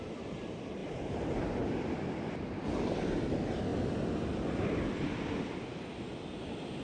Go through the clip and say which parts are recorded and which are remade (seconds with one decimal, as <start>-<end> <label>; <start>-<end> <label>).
0.0-0.8 recorded; 0.8-1.4 remade; 1.4-6.8 recorded